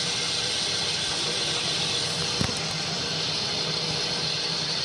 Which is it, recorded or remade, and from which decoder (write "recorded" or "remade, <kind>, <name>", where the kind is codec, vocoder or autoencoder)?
remade, vocoder, BigVGAN v2